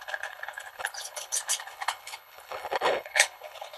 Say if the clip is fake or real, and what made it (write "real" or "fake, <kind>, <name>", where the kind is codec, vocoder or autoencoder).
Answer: fake, codec, HILCodec